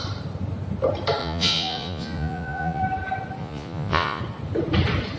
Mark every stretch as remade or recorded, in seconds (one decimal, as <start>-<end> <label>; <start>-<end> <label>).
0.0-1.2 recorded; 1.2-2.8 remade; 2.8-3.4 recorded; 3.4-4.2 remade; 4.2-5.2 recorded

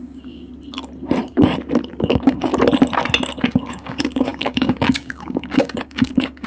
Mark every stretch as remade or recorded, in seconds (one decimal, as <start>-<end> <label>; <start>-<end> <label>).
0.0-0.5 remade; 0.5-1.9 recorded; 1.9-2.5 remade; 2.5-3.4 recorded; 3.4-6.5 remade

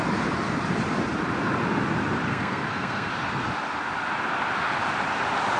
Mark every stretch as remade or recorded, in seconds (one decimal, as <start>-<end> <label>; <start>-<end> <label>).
0.0-2.3 recorded; 2.3-3.1 remade; 3.1-5.6 recorded